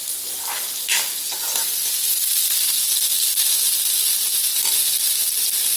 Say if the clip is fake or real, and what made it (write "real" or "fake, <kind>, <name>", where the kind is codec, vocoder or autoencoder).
real